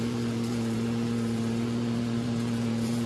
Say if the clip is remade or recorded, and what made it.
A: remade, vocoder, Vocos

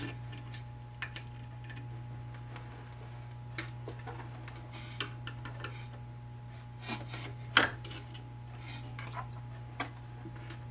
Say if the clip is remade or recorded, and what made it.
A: recorded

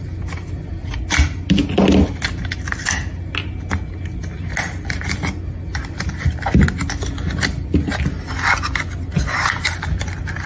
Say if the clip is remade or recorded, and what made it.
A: recorded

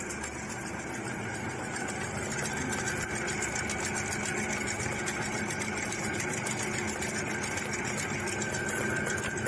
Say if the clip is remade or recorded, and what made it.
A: recorded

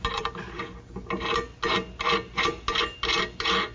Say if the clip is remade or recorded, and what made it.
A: recorded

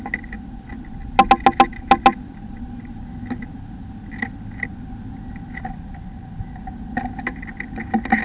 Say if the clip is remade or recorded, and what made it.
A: recorded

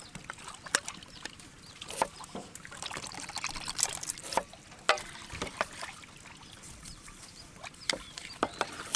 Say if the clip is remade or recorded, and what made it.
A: recorded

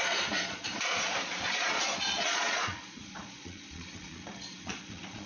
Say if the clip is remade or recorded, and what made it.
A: remade, vocoder, Vocos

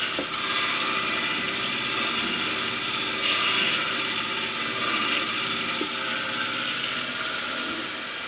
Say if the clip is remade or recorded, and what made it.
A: recorded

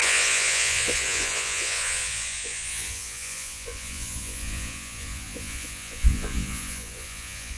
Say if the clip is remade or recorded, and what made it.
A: remade, vocoder, Vocos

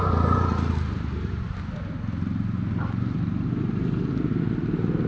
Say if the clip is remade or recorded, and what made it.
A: recorded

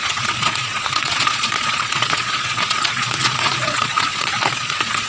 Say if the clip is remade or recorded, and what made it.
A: remade, vocoder, Vocos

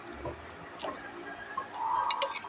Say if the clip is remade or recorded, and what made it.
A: recorded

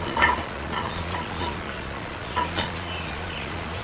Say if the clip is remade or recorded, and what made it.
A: remade, vocoder, Vocos